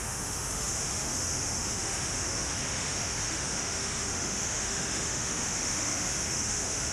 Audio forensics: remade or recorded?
remade